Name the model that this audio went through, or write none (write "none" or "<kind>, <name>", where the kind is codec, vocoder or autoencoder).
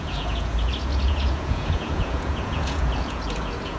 vocoder, Vocos